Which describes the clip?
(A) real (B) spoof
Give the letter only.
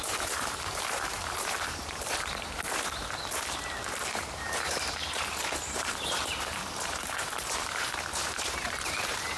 B